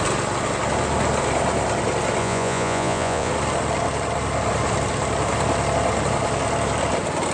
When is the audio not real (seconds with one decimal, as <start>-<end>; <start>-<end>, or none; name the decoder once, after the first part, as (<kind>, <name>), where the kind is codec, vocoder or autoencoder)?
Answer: 2.2-3.3 (vocoder, Vocos)